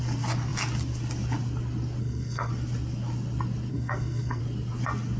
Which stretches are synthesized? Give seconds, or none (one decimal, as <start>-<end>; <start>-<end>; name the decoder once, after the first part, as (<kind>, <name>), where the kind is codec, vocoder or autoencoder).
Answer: 2.0-2.5 (codec, SNAC); 3.7-4.4

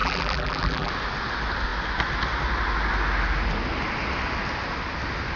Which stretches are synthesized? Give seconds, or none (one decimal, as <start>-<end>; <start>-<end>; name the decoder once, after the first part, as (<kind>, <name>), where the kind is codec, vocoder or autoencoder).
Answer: 0.0-0.9 (vocoder, BigVGAN v2)

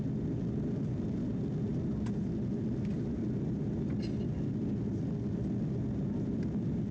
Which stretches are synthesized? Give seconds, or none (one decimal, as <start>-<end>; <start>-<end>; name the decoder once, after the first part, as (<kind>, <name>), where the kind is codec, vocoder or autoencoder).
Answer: none